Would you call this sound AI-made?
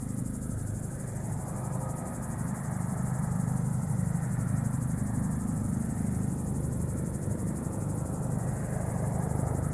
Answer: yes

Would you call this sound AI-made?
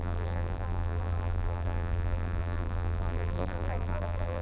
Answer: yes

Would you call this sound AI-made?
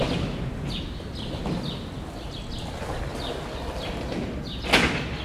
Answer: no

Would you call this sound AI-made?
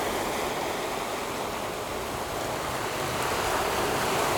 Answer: no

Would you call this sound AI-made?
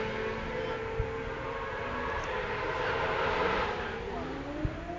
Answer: no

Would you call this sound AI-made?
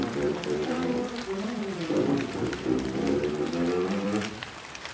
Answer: yes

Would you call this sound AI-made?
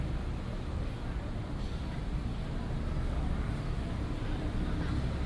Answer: no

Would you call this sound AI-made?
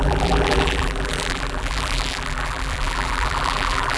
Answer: yes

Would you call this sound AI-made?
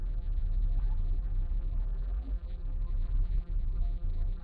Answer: yes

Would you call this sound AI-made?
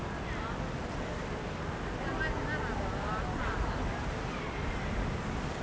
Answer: no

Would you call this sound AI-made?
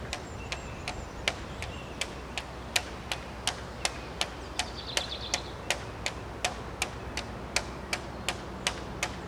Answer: no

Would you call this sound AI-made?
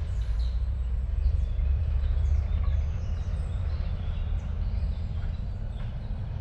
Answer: yes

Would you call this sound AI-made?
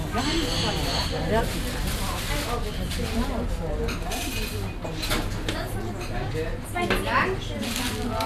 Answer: no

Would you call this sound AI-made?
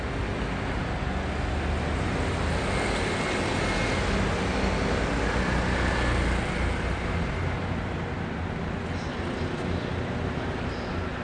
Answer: no